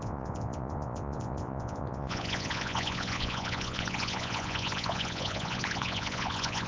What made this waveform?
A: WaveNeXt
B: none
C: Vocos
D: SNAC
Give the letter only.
C